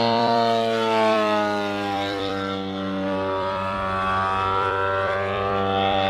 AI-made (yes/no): yes